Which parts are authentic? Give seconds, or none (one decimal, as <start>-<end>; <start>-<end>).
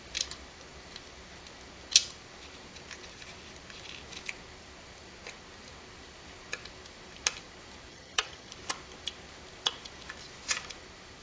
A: 0.0-7.9; 8.5-11.2